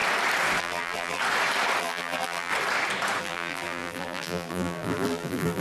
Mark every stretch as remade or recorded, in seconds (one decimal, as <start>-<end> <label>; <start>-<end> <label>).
0.0-0.6 recorded; 0.6-1.2 remade; 1.2-1.8 recorded; 1.8-2.5 remade; 2.5-3.2 recorded; 3.2-5.6 remade